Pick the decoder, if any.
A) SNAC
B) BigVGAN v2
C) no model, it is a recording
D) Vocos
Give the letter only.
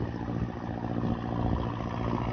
C